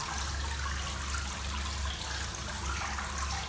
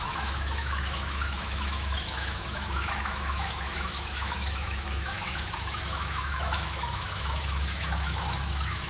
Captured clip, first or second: first